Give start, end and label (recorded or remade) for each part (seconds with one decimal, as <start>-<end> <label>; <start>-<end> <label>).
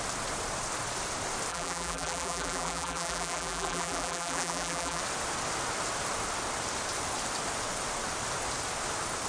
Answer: 0.0-1.5 recorded; 1.5-5.0 remade; 5.0-9.3 recorded